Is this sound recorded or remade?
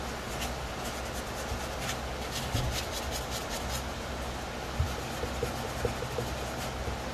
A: recorded